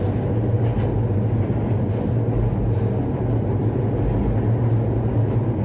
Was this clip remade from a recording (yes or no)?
no